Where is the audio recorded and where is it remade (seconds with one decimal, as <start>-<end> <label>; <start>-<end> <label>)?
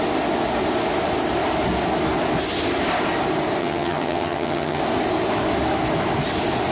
0.0-3.6 recorded; 3.6-4.8 remade; 4.8-6.7 recorded